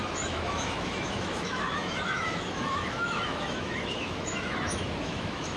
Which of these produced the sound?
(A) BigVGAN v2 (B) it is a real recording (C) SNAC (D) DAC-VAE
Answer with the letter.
D